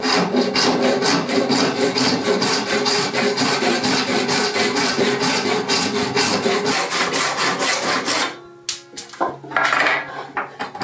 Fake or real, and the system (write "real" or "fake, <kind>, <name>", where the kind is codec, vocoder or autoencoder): real